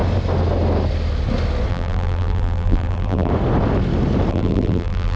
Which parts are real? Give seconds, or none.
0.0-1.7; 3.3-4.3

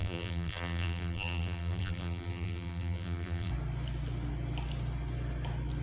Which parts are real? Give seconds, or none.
3.5-5.8

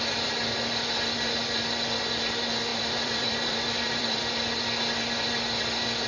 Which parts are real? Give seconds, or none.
0.0-2.7; 4.2-6.1

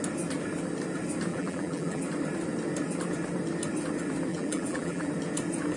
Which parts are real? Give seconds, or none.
0.0-1.3; 2.0-4.3; 5.1-5.8

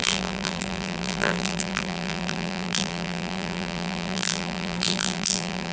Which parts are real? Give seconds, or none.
none

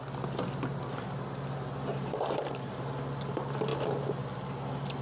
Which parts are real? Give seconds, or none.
0.0-1.9; 2.9-5.0

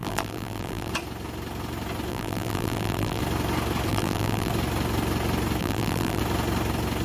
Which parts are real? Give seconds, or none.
0.9-2.1; 3.2-3.9; 4.5-5.6; 6.2-7.0

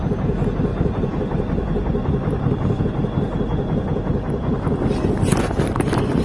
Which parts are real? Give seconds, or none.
0.0-0.7; 2.8-6.2